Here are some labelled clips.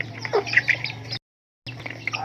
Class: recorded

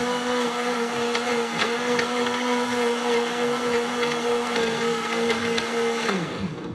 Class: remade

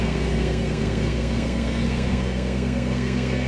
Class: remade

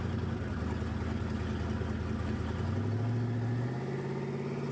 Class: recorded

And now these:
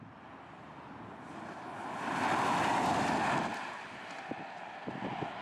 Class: recorded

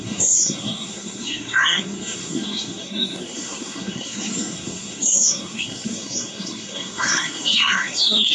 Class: remade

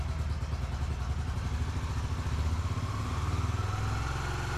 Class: recorded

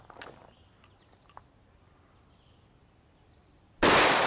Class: recorded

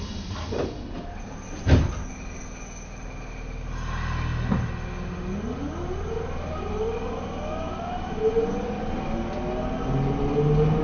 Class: recorded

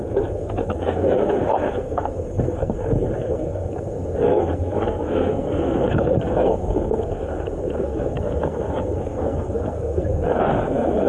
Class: remade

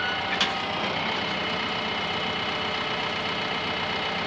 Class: recorded